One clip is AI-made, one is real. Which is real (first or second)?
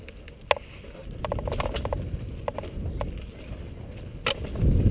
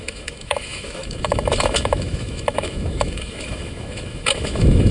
first